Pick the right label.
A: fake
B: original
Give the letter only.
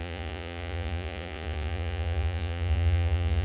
A